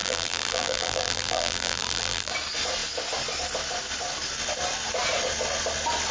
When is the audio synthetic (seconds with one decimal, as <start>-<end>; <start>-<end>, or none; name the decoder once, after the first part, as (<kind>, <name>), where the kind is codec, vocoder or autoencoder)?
0.0-2.3 (vocoder, BigVGAN v2)